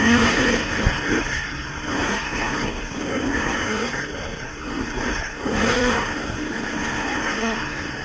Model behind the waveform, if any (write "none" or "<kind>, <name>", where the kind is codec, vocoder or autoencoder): codec, SNAC